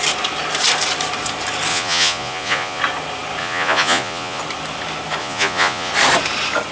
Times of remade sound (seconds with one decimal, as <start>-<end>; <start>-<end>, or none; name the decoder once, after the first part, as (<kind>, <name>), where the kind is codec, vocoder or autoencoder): 1.7-2.8 (vocoder, Vocos); 3.4-4.4; 5.2-5.9